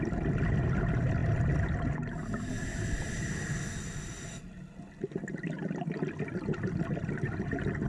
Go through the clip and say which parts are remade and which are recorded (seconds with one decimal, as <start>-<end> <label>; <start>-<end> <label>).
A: 0.0-7.9 recorded